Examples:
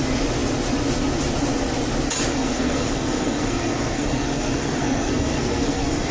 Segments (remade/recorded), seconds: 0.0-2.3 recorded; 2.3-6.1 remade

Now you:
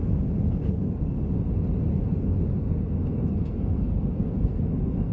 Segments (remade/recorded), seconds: 0.0-1.0 remade; 1.0-1.9 recorded; 1.9-5.1 remade

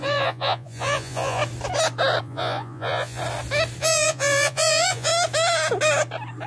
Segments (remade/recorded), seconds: 0.0-1.4 remade; 1.4-2.2 recorded; 2.2-3.2 remade; 3.2-3.8 recorded; 3.8-5.1 remade; 5.1-6.5 recorded

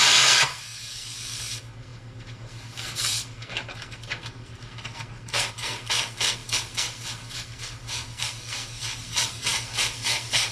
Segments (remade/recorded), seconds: 0.0-10.5 remade

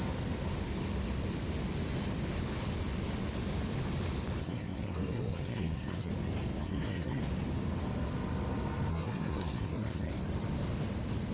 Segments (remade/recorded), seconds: 0.0-4.4 recorded; 4.4-6.1 remade; 6.1-6.6 recorded; 6.6-7.2 remade; 7.2-8.9 recorded; 8.9-10.1 remade; 10.1-11.3 recorded